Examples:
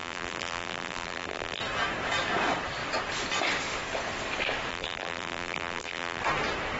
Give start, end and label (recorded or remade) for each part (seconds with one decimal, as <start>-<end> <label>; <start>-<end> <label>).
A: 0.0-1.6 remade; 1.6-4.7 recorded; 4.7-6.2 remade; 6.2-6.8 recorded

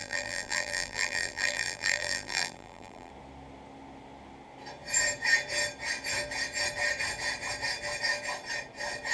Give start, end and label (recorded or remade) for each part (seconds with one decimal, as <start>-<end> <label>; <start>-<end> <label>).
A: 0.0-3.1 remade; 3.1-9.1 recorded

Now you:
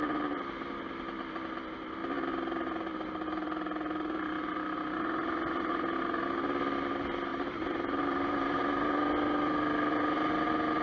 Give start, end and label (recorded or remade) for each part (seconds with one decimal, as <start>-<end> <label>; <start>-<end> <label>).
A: 0.0-7.3 recorded; 7.3-8.6 remade; 8.6-10.8 recorded

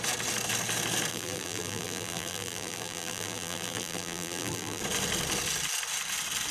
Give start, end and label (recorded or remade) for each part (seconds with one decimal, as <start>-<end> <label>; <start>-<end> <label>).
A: 0.0-1.1 recorded; 1.1-4.8 remade; 4.8-6.5 recorded

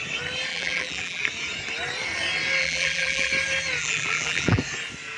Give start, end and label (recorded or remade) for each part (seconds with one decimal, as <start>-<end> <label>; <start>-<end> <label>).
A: 0.0-0.5 recorded; 0.5-1.2 remade; 1.2-2.6 recorded; 2.6-3.3 remade; 3.3-3.8 recorded; 3.8-4.6 remade; 4.6-5.2 recorded

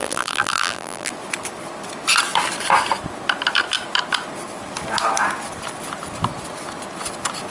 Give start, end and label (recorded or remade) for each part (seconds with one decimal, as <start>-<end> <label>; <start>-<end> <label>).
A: 0.0-1.1 remade; 1.1-7.5 recorded